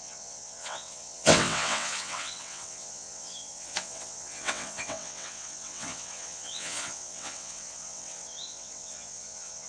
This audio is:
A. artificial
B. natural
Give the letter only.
A